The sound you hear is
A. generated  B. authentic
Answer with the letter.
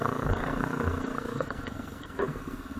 A